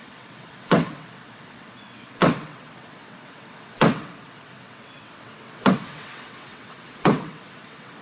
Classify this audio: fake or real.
fake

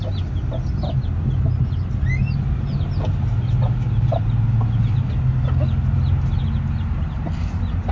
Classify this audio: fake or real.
real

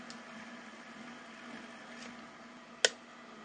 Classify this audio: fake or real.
real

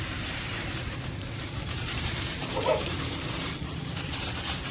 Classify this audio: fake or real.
fake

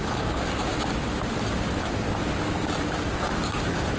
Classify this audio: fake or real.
real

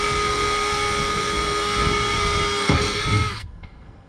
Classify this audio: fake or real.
fake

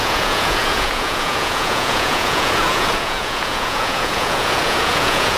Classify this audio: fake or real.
fake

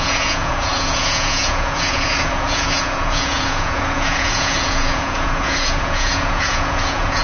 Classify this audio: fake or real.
fake